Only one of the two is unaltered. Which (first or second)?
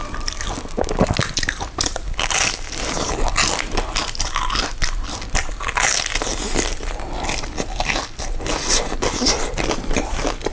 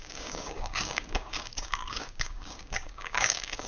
first